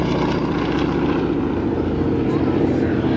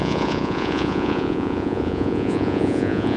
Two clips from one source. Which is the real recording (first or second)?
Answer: first